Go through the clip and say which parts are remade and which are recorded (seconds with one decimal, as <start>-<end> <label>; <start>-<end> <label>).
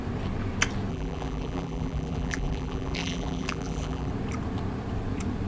0.0-0.9 recorded; 0.9-4.1 remade; 4.1-5.5 recorded